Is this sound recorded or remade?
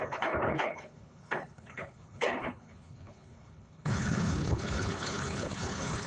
remade